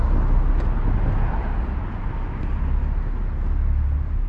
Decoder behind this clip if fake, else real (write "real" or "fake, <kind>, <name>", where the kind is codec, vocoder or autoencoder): real